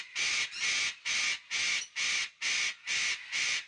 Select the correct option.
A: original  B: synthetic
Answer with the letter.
A